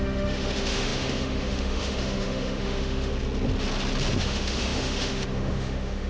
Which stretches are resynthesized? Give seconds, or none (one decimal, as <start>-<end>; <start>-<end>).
0.0-3.1; 4.2-6.1